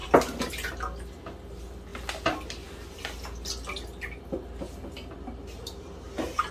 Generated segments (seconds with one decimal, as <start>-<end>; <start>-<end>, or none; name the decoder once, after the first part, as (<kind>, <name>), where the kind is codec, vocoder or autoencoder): none